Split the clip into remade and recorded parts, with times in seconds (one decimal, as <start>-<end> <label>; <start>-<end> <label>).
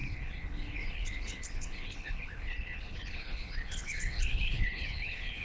0.0-5.4 remade